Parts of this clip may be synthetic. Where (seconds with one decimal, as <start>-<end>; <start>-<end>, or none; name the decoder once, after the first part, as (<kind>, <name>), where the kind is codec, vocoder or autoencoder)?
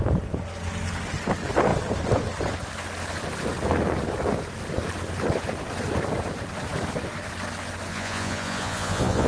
7.9-9.3 (vocoder, Vocos)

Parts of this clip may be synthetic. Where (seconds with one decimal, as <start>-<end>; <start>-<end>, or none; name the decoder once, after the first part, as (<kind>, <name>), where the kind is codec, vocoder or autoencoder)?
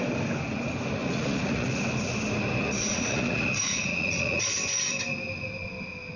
1.0-1.8 (vocoder, Vocos); 2.6-4.4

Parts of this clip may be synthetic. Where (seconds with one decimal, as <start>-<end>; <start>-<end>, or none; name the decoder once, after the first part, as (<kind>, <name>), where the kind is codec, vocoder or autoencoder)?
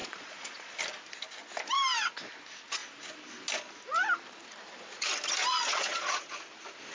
0.0-0.8 (vocoder, Vocos); 5.4-6.3